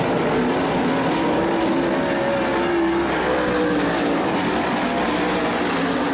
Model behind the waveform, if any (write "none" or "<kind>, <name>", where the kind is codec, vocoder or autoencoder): none